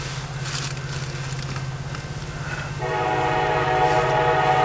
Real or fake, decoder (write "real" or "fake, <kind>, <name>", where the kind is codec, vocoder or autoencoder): real